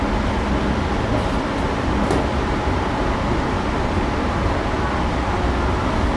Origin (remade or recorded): recorded